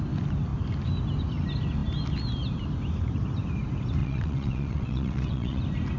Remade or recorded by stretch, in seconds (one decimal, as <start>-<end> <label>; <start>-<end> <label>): 0.0-4.0 recorded; 4.0-5.6 remade; 5.6-6.0 recorded